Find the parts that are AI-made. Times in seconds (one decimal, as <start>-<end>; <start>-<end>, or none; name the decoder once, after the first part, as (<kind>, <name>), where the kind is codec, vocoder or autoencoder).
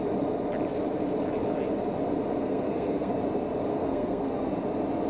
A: 2.4-3.1 (codec, SNAC); 3.7-4.5